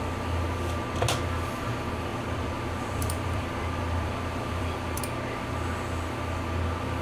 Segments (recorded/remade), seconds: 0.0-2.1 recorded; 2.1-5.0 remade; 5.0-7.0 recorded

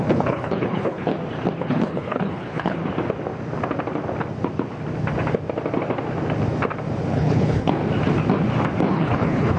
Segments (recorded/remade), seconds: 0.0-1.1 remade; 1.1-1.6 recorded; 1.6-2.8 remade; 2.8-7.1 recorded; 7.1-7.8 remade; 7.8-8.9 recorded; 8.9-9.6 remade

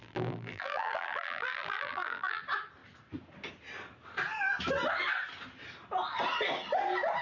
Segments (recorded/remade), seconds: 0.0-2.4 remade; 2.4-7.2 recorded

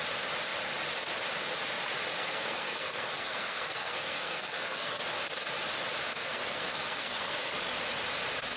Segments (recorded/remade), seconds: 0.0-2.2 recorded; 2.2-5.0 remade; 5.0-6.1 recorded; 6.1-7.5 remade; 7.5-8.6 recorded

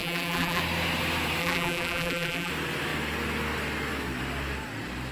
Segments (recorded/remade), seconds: 0.0-0.6 remade; 0.6-1.4 recorded; 1.4-2.5 remade; 2.5-5.1 recorded

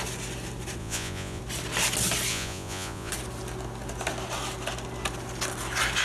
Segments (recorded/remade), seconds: 0.0-0.8 recorded; 0.8-1.4 remade; 1.4-2.3 recorded; 2.3-3.1 remade; 3.1-6.0 recorded

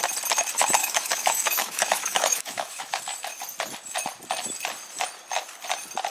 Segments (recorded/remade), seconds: 0.0-0.8 recorded; 0.8-3.0 remade; 3.0-6.1 recorded